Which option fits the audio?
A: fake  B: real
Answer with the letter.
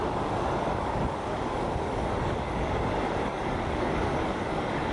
A